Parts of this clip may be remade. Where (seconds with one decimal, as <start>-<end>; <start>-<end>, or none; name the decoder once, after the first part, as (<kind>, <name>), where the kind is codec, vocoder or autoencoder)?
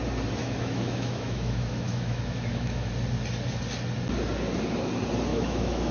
0.4-2.9 (autoencoder, DAC-VAE); 5.3-5.9